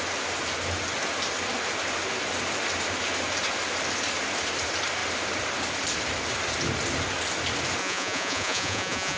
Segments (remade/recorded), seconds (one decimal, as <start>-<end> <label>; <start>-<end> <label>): 0.0-7.8 recorded; 7.8-9.2 remade